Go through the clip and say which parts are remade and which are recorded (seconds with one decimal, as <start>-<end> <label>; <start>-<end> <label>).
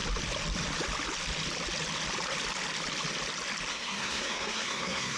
0.0-3.7 recorded; 3.7-5.2 remade